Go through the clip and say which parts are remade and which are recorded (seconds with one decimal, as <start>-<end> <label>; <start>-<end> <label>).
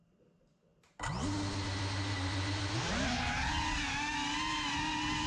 0.0-5.3 recorded